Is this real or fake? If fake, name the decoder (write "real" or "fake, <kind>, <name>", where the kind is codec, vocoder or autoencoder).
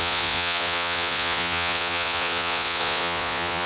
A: fake, vocoder, Vocos